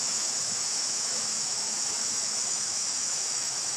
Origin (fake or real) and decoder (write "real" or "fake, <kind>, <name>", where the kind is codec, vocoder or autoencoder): fake, autoencoder, DAC-VAE